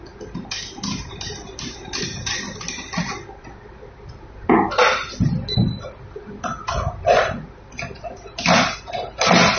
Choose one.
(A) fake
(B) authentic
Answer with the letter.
B